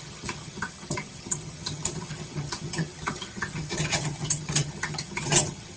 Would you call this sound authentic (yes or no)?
no